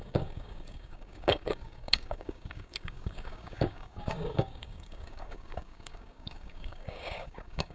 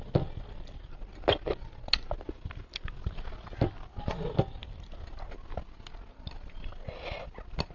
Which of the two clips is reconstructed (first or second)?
first